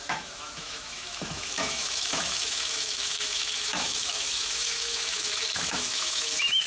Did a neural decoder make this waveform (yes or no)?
yes